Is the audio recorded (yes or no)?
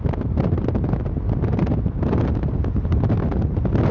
yes